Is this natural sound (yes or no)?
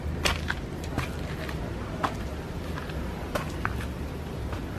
yes